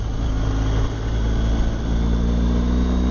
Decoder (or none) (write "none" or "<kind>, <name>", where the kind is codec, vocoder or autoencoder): none